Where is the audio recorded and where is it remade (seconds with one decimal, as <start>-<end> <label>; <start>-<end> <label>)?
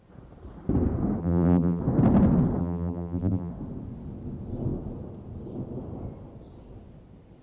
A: 0.0-1.2 recorded; 1.2-1.8 remade; 1.8-2.6 recorded; 2.6-3.5 remade; 3.5-7.4 recorded